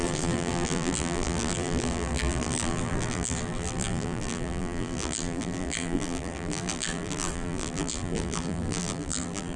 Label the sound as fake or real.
fake